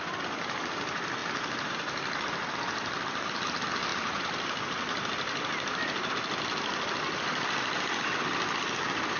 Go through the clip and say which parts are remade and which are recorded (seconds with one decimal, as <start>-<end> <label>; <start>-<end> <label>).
0.0-9.2 recorded